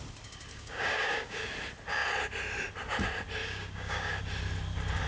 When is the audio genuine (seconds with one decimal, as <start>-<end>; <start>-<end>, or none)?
0.0-0.5; 1.5-3.4; 4.2-5.1